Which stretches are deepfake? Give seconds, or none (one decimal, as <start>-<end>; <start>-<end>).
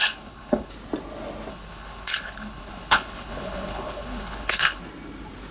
0.0-0.7; 1.5-4.8